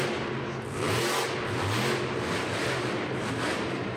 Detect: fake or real real